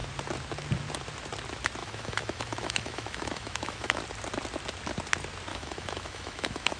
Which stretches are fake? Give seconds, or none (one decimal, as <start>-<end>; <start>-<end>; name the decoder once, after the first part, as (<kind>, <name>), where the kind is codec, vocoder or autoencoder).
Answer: 1.8-4.0 (autoencoder, DAC-VAE); 5.5-6.8